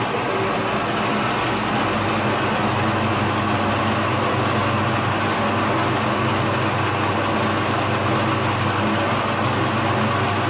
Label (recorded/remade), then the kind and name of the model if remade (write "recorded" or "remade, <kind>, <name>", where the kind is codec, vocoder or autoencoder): recorded